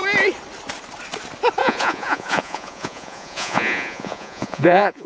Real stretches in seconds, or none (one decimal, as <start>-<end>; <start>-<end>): 0.0-1.6